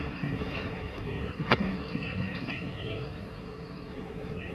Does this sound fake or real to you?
fake